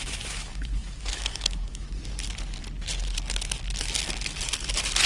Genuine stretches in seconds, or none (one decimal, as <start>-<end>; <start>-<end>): 2.0-5.1